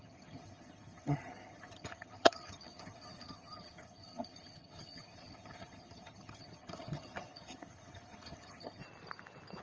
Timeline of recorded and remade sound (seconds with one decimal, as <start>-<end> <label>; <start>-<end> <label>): 0.0-8.8 remade; 8.8-9.6 recorded